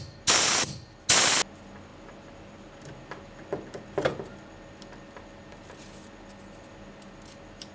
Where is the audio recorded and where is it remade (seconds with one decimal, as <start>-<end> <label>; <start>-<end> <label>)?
0.0-7.7 recorded